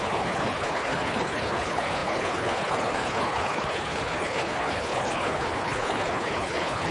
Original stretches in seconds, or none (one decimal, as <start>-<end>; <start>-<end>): none